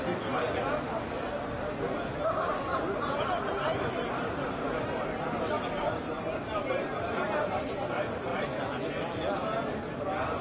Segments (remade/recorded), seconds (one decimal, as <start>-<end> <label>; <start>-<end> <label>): 0.0-2.7 recorded; 2.7-7.7 remade; 7.7-10.4 recorded